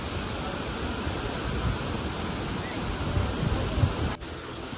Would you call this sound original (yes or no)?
yes